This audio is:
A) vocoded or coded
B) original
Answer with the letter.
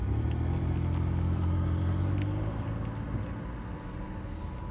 B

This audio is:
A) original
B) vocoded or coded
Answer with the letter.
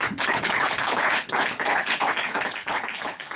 B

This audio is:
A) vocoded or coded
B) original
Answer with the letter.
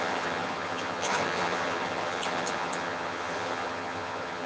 A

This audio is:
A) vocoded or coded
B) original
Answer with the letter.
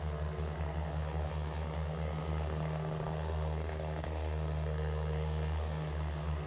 A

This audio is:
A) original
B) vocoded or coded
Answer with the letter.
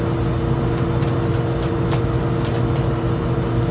A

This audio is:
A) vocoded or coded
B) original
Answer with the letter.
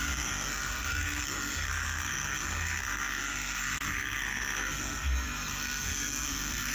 A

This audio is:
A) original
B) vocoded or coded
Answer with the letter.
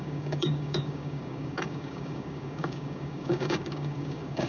B